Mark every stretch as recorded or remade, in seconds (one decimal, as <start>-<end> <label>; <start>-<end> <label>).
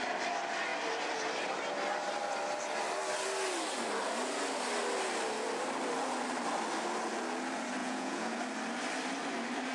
0.0-7.8 recorded; 7.8-8.4 remade; 8.4-9.7 recorded